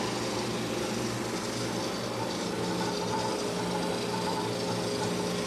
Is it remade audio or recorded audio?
recorded